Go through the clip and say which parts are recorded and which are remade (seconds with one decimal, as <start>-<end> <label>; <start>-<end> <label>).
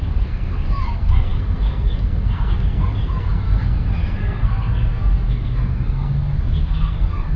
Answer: 0.0-7.4 remade